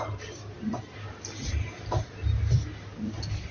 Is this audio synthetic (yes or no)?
no